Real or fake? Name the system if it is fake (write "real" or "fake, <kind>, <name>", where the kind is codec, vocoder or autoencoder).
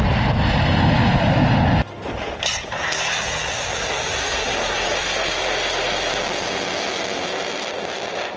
real